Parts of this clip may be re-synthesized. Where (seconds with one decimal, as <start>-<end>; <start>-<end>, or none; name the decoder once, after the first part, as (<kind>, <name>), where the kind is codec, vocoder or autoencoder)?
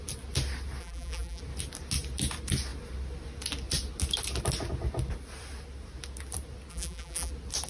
0.8-1.4 (vocoder, BigVGAN v2); 6.7-7.3